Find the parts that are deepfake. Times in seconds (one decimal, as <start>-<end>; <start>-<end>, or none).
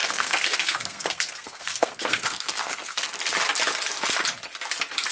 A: 0.0-3.1